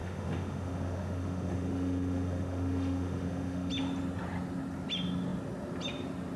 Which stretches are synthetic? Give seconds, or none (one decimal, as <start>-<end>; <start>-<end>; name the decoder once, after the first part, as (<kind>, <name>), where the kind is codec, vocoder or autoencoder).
0.0-3.7 (autoencoder, DAC-VAE)